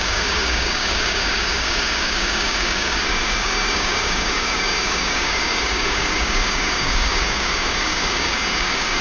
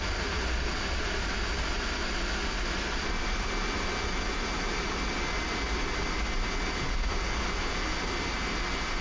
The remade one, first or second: first